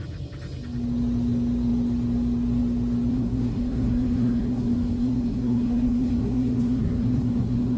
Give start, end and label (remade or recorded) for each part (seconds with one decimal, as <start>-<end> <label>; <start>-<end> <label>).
0.0-3.1 recorded; 3.1-7.8 remade